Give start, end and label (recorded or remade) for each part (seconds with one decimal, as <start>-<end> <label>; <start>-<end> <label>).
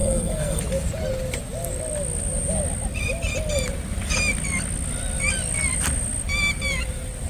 0.0-0.6 remade; 0.6-7.3 recorded